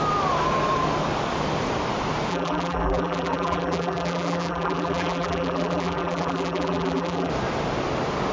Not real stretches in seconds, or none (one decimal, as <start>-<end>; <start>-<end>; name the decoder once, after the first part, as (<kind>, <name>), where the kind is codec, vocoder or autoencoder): 2.3-7.3 (vocoder, BigVGAN v2)